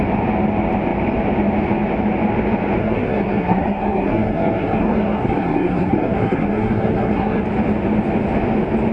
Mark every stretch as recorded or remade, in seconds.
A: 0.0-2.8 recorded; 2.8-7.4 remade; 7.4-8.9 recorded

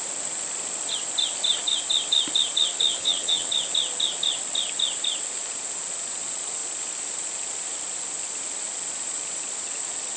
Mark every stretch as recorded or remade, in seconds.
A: 0.0-2.9 recorded; 2.9-3.5 remade; 3.5-10.2 recorded

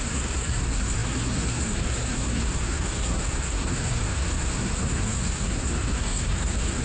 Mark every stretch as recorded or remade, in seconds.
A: 0.0-6.8 remade